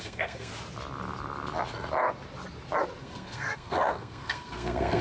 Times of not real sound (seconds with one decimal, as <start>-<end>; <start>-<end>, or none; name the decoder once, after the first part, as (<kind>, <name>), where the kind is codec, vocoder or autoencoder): 0.0-0.5 (codec, SNAC); 3.0-5.0